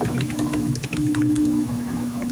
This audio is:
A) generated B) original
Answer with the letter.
A